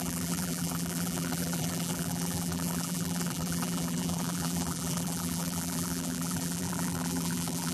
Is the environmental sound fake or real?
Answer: fake